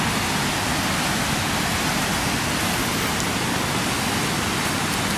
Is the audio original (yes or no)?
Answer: yes